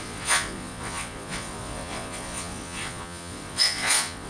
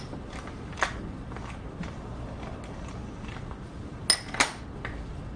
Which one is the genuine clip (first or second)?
second